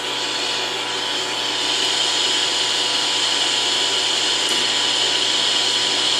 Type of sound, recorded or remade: recorded